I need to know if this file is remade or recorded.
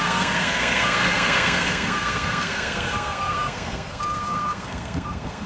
remade